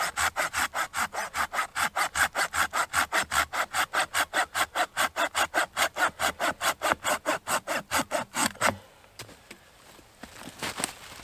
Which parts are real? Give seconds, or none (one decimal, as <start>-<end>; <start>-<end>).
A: 0.0-8.4; 10.0-11.2